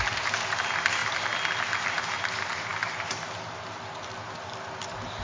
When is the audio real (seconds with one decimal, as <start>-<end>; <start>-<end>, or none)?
0.0-5.2